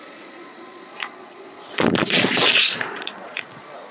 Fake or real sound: fake